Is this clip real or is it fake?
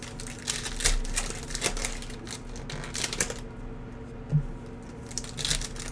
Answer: real